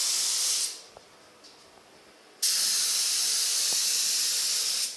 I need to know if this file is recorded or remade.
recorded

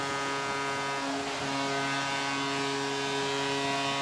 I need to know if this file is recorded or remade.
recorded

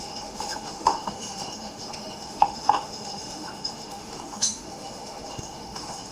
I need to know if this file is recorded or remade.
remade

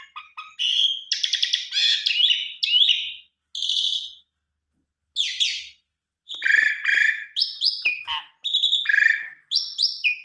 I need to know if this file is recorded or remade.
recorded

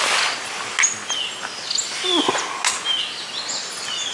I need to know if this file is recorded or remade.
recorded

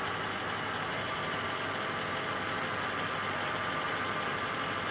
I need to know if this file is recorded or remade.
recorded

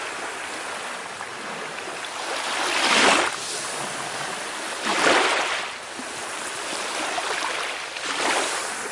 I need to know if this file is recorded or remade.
recorded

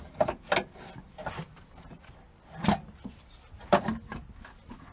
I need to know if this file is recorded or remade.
recorded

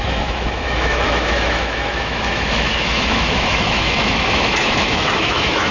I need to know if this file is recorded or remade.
remade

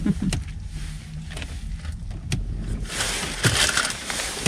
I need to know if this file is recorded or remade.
recorded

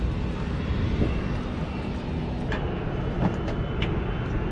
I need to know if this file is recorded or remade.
recorded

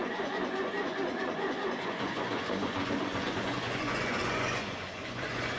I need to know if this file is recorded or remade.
remade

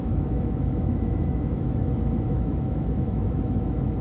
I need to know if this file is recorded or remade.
remade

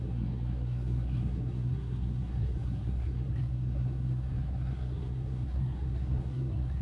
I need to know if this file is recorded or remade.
remade